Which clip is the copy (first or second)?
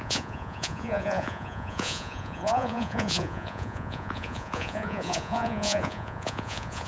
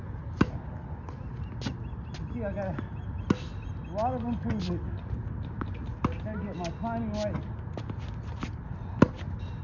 first